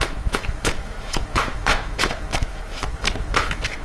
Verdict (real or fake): fake